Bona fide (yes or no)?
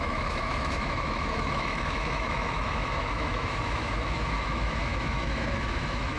no